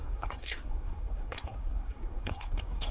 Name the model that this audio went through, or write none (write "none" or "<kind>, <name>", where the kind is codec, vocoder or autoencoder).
codec, SNAC